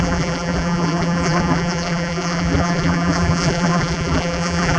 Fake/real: fake